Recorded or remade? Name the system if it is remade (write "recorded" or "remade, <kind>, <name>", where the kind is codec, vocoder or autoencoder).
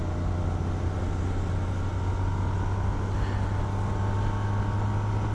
recorded